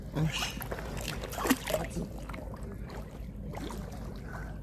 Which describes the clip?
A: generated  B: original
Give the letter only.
B